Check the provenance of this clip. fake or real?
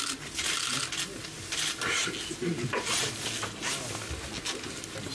real